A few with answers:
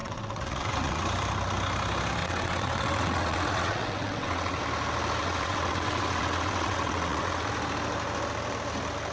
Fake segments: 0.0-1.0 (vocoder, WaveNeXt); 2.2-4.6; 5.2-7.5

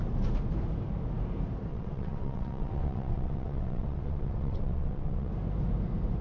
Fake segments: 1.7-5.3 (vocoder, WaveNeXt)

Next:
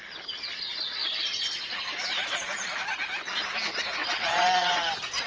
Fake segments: 4.0-4.8 (vocoder, WaveNeXt)